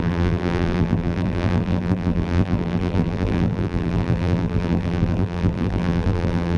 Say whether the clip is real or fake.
fake